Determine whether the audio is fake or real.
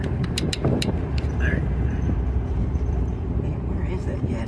fake